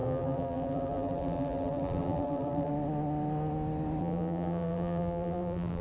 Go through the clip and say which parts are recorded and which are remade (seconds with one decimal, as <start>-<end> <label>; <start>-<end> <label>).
0.0-2.7 remade; 2.7-4.0 recorded; 4.0-5.8 remade